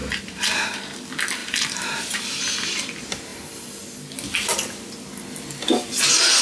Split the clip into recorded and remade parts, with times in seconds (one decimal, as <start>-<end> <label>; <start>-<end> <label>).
0.0-0.8 remade; 0.8-1.4 recorded; 1.4-2.4 remade; 2.4-6.4 recorded

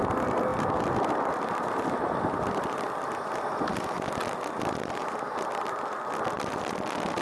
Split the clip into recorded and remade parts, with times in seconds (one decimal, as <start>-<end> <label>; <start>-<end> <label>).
0.0-7.2 recorded

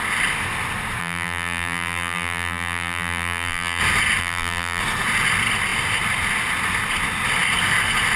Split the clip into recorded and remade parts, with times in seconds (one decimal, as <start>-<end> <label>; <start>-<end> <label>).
0.0-1.0 recorded; 1.0-3.8 remade; 3.8-4.2 recorded; 4.2-4.8 remade; 4.8-8.2 recorded